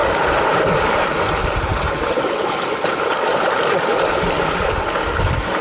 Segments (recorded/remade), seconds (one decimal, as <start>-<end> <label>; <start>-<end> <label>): 0.0-5.6 recorded